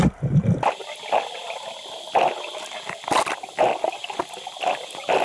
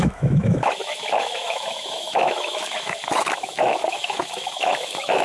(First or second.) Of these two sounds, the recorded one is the first